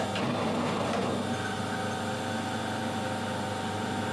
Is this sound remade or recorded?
recorded